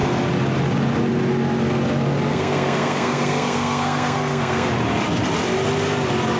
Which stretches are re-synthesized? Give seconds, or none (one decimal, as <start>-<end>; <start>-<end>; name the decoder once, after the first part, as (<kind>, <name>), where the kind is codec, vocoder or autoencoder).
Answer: 2.3-4.7 (codec, SNAC)